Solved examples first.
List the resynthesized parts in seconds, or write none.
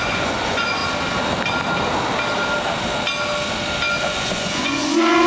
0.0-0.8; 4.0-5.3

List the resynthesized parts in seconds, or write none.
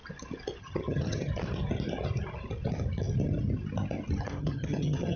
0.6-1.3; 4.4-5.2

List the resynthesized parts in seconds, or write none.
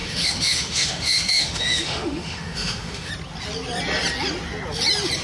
0.0-3.1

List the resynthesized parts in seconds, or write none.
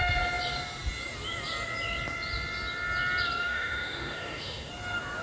3.4-4.7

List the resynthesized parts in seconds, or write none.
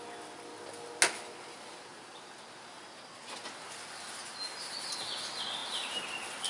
5.6-6.1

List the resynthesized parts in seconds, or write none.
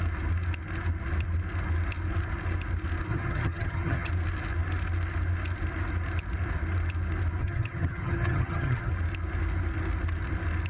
3.1-4.1; 7.4-8.9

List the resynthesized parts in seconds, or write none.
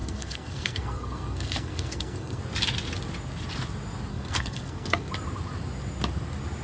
0.0-2.4; 4.1-5.1